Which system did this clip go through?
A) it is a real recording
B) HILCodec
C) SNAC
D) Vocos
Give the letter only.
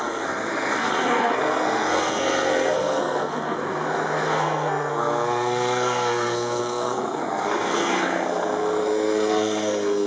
C